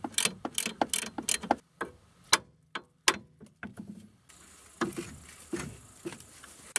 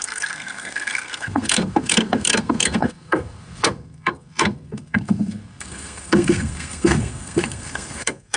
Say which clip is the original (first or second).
first